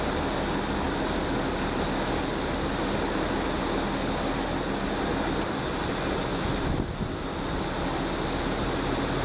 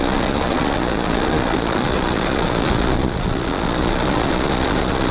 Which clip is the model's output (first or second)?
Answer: second